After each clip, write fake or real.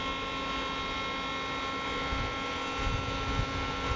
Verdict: real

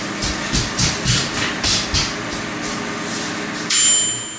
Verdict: real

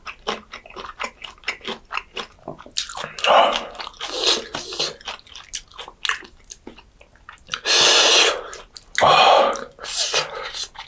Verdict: real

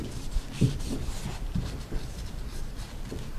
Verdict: fake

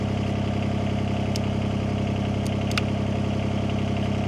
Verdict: real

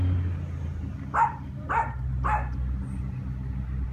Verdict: real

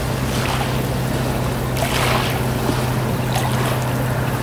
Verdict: real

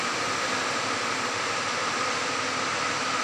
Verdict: real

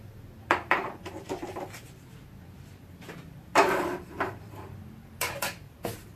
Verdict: fake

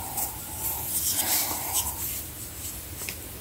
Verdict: real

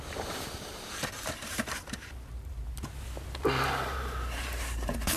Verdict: fake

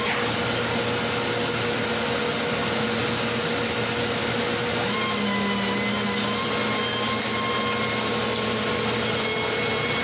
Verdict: real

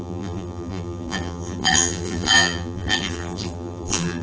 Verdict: fake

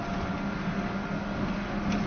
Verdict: real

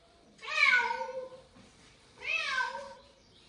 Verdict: fake